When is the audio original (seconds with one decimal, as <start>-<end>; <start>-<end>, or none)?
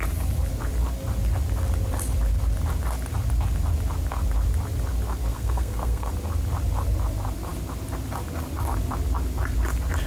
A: 0.0-5.3; 6.1-10.1